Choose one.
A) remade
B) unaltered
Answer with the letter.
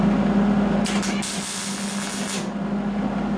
B